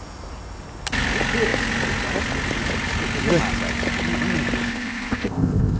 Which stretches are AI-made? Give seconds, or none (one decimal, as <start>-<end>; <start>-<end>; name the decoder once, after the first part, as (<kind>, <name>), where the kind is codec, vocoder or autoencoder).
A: 4.7-5.8 (codec, ZipCodec)